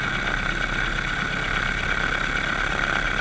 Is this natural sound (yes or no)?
yes